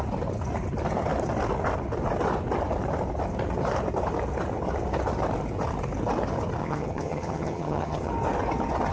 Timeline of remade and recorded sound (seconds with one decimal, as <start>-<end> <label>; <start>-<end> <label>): 0.0-6.6 recorded; 6.6-8.1 remade; 8.1-8.9 recorded

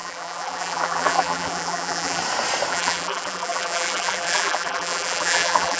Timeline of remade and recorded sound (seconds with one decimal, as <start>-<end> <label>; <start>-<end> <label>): 0.0-2.2 remade; 2.2-2.7 recorded; 2.7-5.8 remade